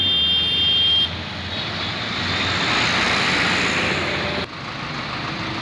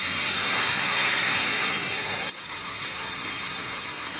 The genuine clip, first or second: first